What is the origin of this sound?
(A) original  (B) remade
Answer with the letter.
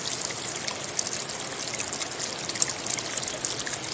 A